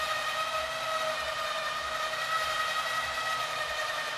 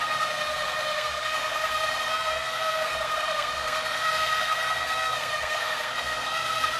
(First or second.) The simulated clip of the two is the second